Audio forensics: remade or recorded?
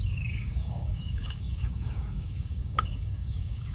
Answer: remade